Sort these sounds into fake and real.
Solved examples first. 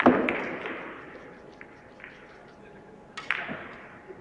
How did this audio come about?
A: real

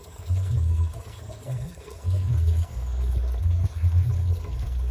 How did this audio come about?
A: fake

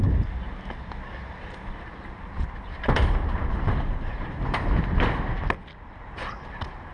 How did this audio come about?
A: real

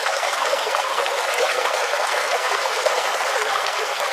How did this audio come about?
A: fake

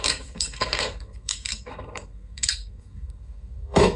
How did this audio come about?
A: fake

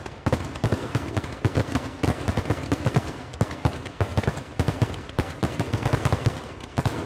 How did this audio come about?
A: fake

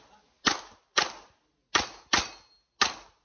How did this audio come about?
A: real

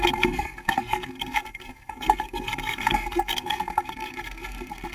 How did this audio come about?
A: fake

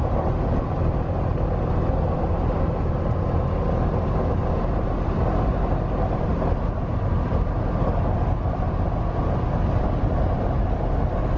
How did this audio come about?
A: real